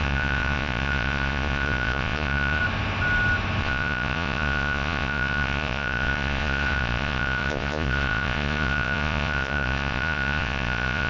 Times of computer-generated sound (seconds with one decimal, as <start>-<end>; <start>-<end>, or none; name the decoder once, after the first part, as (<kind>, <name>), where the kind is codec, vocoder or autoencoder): 0.0-2.6 (vocoder, Vocos); 3.6-11.1

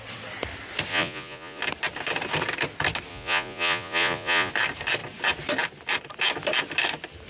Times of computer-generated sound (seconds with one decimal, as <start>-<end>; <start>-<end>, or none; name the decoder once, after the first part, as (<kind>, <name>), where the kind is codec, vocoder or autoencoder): 0.9-1.6 (vocoder, Vocos); 3.1-4.5

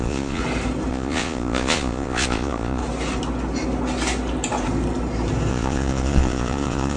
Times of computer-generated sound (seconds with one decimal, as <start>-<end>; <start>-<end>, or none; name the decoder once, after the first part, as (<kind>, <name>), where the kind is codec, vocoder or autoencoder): 0.0-0.4 (vocoder, Vocos); 0.9-2.8; 5.5-7.0